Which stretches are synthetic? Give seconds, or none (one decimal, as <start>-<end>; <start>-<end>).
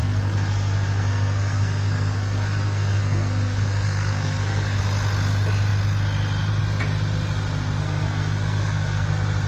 0.0-4.8; 7.8-9.1